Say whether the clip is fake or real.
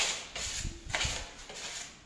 real